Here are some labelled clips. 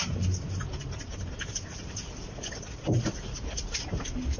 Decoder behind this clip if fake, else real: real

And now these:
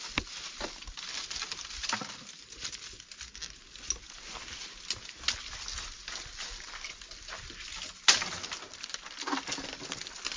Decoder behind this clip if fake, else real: real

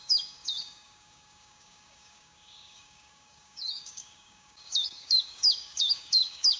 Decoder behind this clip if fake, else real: fake, codec, DAC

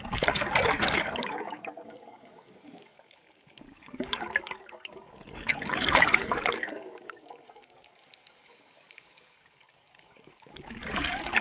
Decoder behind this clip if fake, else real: fake, codec, DAC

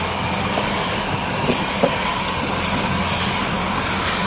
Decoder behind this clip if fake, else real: fake, codec, DAC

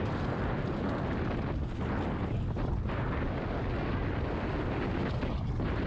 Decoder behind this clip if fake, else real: real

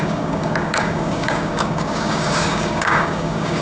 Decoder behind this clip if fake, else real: fake, codec, DAC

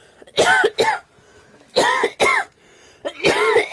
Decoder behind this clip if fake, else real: real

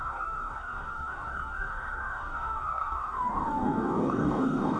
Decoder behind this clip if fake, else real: fake, codec, DAC